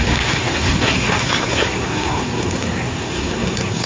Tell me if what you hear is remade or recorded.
remade